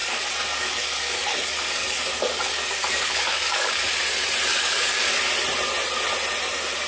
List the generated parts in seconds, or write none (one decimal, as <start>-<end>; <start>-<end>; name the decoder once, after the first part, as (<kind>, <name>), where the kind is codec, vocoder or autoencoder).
0.0-3.8 (codec, DAC); 4.5-5.2